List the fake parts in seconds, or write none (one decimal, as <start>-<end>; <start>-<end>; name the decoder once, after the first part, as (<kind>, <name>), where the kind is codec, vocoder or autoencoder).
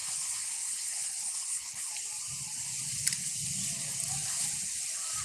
0.0-1.9 (codec, HILCodec)